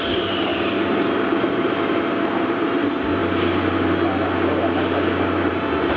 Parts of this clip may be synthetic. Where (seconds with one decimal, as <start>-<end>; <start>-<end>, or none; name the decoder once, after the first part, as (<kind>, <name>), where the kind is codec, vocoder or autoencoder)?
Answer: 0.0-3.2 (vocoder, BigVGAN v2); 5.5-6.0